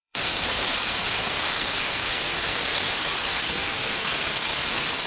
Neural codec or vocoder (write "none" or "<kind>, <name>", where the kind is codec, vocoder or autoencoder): codec, SNAC